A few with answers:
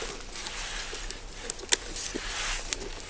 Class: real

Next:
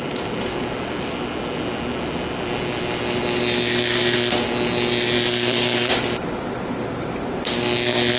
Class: real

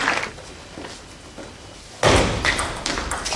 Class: real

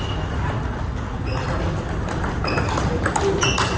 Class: real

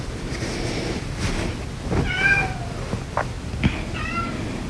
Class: real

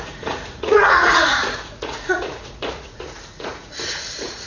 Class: fake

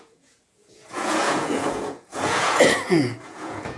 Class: fake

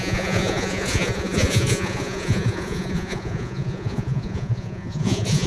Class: fake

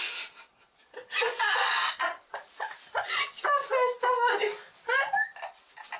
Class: real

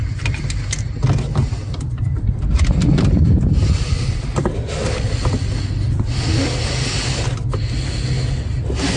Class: real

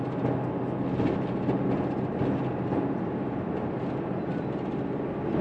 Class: real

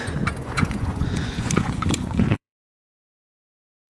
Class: fake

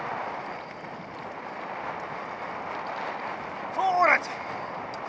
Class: real